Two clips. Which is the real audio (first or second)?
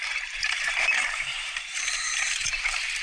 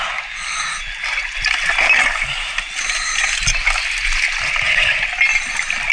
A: second